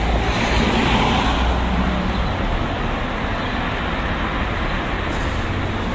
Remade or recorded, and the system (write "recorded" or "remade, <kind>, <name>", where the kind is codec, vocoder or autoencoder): recorded